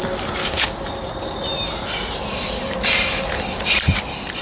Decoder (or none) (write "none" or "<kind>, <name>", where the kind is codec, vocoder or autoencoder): none